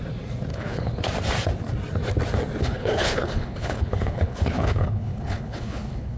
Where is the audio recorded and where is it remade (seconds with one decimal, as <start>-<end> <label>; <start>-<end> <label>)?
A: 0.0-0.5 recorded; 0.5-1.1 remade; 1.1-2.6 recorded; 2.6-6.2 remade